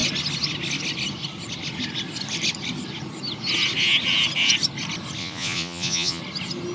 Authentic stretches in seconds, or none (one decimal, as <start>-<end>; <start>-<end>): 0.0-5.2; 6.2-6.7